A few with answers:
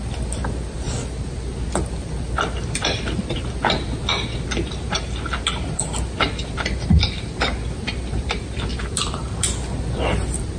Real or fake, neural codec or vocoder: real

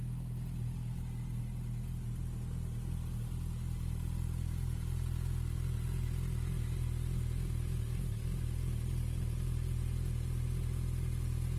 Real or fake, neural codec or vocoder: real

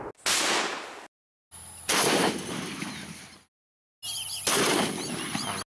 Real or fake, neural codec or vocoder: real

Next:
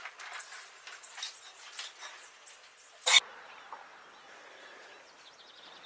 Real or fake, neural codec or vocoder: real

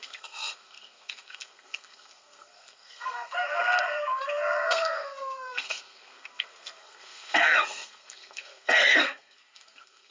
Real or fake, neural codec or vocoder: fake, codec, SNAC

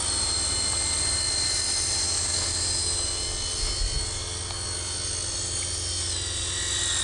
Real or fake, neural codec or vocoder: real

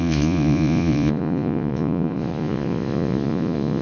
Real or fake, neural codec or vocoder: fake, vocoder, Vocos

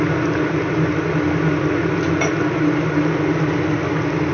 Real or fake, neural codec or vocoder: real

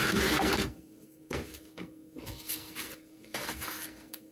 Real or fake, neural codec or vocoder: fake, codec, SNAC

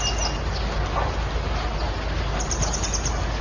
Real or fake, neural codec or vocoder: real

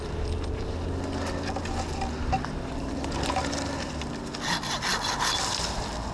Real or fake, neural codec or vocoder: real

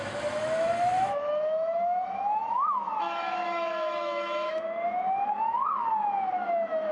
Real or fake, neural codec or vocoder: fake, autoencoder, DAC-VAE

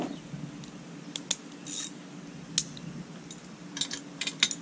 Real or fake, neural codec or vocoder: real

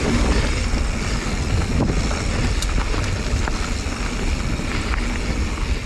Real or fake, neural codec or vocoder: real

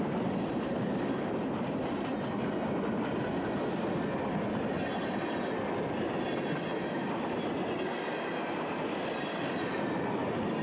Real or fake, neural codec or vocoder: real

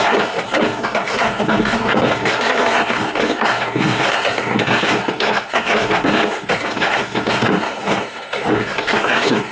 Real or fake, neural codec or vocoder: fake, codec, SNAC